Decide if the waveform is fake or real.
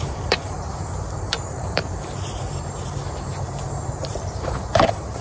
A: fake